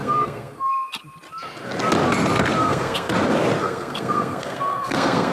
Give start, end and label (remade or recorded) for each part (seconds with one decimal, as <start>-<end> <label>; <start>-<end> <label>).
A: 0.0-0.7 remade; 0.7-2.6 recorded; 2.6-3.1 remade; 3.1-3.6 recorded; 3.6-5.3 remade